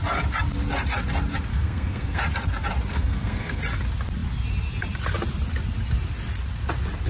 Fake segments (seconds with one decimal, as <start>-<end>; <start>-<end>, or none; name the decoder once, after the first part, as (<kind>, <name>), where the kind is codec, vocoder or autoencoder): 1.5-2.2 (codec, SNAC); 2.9-3.6